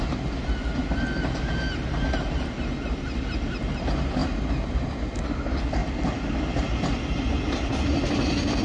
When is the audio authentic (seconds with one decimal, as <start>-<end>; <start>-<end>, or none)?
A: 0.0-8.6